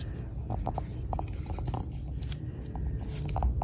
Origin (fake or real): real